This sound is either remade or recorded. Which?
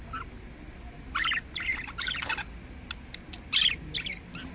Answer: recorded